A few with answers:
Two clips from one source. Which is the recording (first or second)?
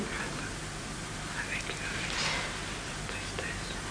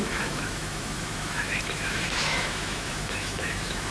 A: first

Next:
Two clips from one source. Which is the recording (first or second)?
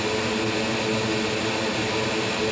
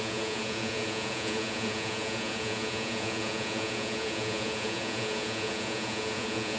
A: first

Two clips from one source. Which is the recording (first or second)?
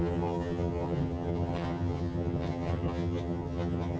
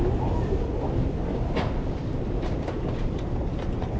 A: second